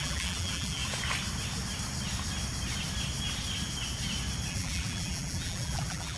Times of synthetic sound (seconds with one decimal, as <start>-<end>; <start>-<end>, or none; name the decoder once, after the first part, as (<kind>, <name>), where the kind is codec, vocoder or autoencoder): 0.0-0.8 (vocoder, BigVGAN v2); 4.5-6.2